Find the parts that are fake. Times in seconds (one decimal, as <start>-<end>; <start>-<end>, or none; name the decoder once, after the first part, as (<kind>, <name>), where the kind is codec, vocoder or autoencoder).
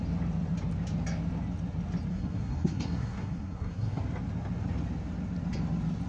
2.1-4.0 (codec, SNAC)